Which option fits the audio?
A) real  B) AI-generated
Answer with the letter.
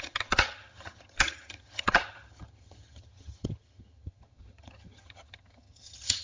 B